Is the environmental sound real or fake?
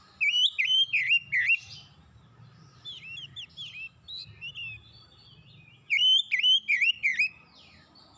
real